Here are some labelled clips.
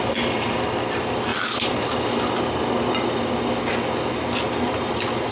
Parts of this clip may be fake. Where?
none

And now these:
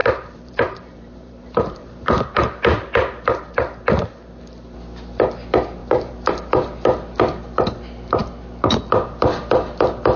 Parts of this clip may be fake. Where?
0.0-2.4 (vocoder, BigVGAN v2); 5.8-6.3

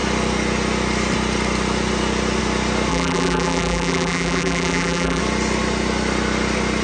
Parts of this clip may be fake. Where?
2.9-5.2 (vocoder, BigVGAN v2)

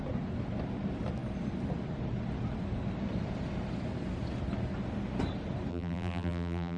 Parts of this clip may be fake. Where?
5.7-6.8 (vocoder, BigVGAN v2)

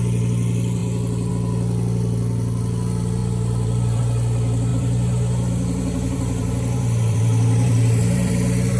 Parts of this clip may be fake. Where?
3.2-4.0 (vocoder, BigVGAN v2); 4.7-8.8